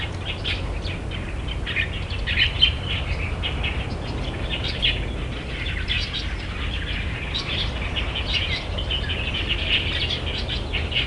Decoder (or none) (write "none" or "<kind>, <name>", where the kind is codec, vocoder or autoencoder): none